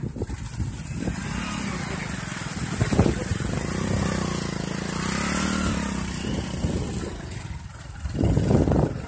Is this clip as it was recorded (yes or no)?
yes